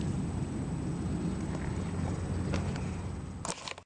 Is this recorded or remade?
recorded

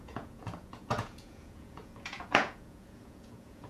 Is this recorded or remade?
remade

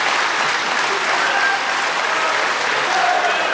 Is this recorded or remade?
recorded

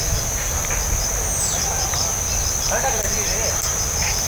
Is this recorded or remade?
recorded